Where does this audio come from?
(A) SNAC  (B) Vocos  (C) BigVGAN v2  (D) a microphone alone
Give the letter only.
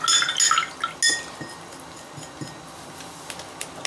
D